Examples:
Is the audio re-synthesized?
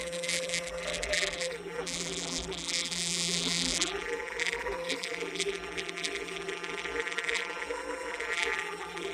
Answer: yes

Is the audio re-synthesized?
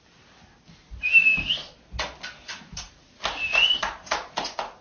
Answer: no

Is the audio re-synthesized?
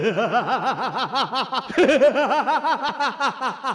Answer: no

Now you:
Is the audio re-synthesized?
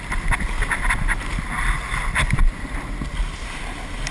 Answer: no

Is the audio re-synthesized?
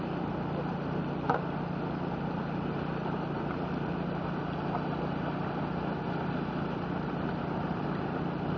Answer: no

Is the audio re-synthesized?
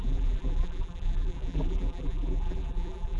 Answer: yes